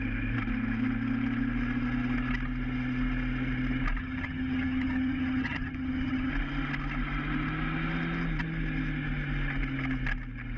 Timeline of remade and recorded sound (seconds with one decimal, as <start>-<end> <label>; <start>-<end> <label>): 0.0-4.0 recorded; 4.0-6.3 remade; 6.3-10.6 recorded